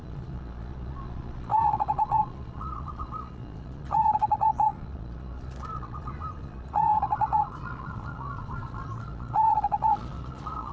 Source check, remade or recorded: remade